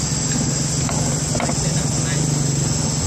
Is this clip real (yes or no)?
yes